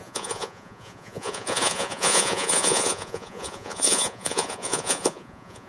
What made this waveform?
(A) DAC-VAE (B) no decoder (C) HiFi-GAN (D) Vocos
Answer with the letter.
D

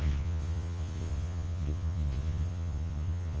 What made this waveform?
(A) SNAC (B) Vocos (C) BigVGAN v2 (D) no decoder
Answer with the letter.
B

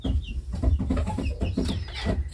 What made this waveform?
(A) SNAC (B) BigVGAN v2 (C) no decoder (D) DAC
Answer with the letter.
B